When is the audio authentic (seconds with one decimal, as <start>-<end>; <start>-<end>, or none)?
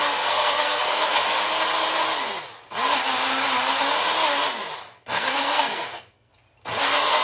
1.4-4.8; 6.3-6.8